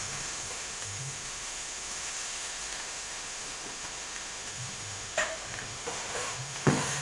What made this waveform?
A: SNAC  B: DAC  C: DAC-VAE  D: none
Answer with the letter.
C